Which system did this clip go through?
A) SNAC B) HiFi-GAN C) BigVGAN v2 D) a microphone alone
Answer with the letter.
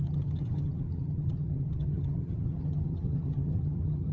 B